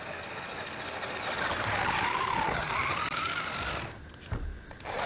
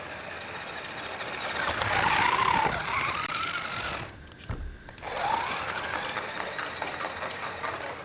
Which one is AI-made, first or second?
second